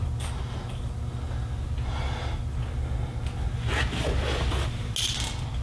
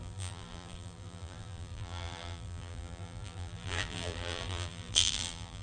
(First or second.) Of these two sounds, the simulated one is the second